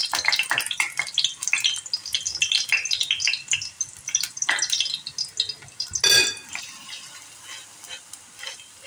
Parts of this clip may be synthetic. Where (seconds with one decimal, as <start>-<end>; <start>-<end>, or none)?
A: none